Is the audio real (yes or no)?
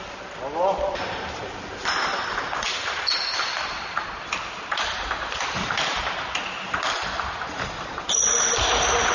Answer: yes